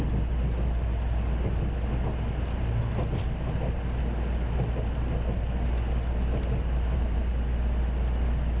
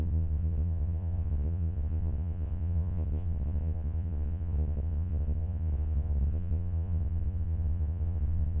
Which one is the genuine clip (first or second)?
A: first